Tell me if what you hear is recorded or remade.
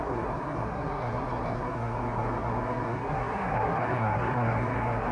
remade